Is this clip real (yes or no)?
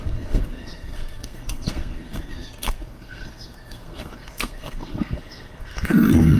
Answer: no